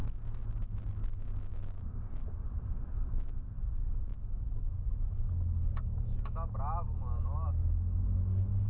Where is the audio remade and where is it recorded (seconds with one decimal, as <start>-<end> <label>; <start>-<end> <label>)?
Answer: 0.0-1.5 recorded; 1.5-2.1 remade; 2.1-8.7 recorded